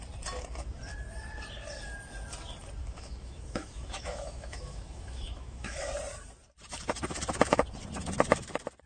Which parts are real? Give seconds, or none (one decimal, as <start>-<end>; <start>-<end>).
0.0-2.8; 5.9-8.9